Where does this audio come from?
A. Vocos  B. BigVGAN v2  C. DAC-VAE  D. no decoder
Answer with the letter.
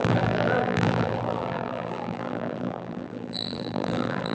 B